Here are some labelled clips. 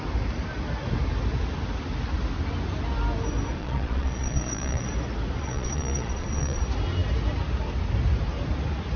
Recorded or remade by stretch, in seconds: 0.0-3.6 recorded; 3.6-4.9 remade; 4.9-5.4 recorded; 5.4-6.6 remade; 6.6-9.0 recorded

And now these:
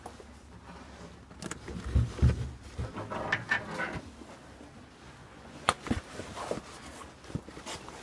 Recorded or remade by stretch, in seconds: 0.0-5.2 recorded; 5.2-5.9 remade; 5.9-8.0 recorded

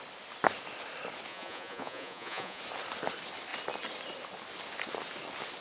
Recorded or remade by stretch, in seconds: 0.0-1.3 recorded; 1.3-2.6 remade; 2.6-5.6 recorded

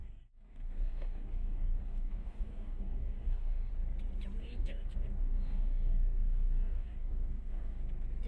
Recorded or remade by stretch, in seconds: 0.0-3.7 remade; 3.7-4.4 recorded; 4.4-7.8 remade; 7.8-8.3 recorded

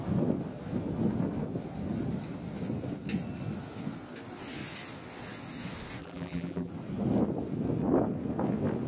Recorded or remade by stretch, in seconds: 0.0-6.0 recorded; 6.0-6.7 remade; 6.7-8.9 recorded

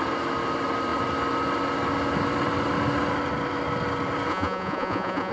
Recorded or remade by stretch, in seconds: 0.0-4.3 recorded; 4.3-5.3 remade

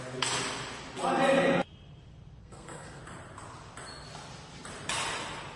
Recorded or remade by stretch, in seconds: 0.0-2.4 recorded; 2.4-3.0 remade; 3.0-5.6 recorded

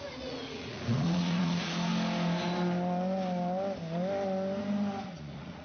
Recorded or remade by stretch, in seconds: 0.0-1.9 remade; 1.9-5.0 recorded; 5.0-5.6 remade